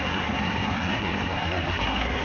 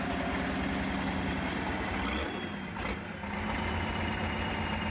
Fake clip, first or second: first